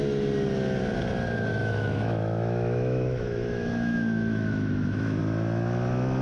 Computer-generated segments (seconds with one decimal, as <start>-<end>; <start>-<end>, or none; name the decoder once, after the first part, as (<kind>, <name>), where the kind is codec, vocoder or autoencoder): 1.5-5.2 (autoencoder, DAC-VAE)

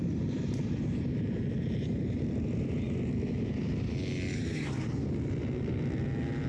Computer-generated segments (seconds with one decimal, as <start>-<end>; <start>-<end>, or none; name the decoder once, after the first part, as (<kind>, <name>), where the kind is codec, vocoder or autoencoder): 0.0-3.9 (vocoder, BigVGAN v2)